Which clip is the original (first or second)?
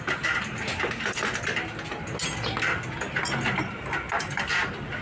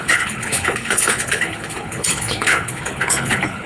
first